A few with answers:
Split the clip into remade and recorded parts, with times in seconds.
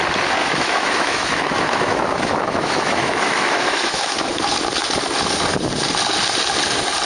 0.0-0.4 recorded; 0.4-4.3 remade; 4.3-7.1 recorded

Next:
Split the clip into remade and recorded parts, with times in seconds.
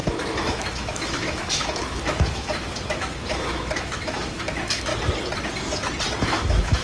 0.0-4.9 remade; 4.9-6.2 recorded; 6.2-6.8 remade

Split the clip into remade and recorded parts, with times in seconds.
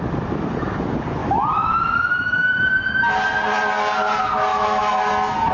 0.0-1.2 recorded; 1.2-2.9 remade; 2.9-4.5 recorded; 4.5-5.1 remade; 5.1-5.5 recorded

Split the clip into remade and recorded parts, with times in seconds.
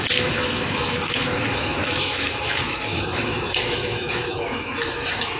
0.0-5.4 remade